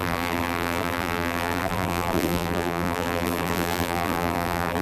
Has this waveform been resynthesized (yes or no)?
yes